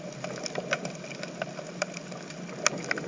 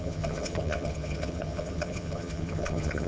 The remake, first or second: second